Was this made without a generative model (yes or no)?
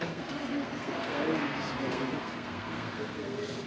no